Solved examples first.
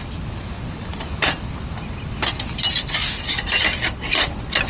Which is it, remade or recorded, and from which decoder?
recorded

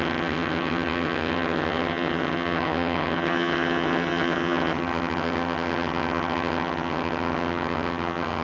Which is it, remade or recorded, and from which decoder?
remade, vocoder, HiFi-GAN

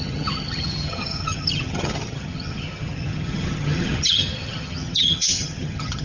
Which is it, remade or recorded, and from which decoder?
remade, vocoder, HiFi-GAN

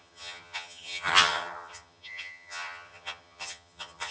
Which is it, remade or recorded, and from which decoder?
remade, vocoder, HiFi-GAN